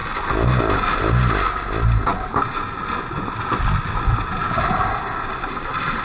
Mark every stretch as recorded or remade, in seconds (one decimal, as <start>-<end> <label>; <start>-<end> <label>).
0.0-6.0 recorded